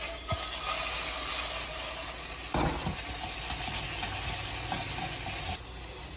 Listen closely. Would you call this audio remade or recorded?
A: recorded